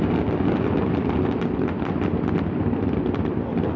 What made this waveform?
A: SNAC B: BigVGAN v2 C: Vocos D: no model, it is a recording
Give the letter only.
D